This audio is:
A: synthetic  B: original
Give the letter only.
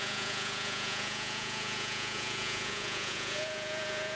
A